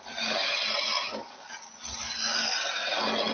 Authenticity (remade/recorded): recorded